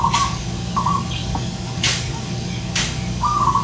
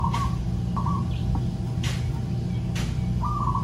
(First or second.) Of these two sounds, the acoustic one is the second